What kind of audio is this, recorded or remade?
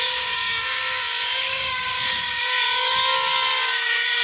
remade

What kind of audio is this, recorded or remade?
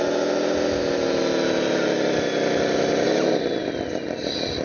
recorded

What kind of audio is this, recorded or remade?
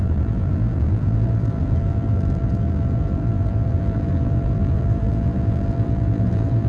remade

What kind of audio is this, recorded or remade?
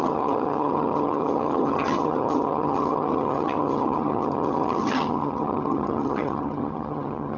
remade